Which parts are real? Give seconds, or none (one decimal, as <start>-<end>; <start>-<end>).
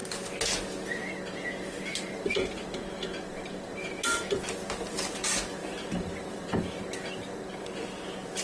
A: 0.0-5.6; 6.8-8.4